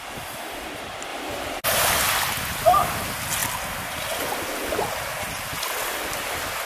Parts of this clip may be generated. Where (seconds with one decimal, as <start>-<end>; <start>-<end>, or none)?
none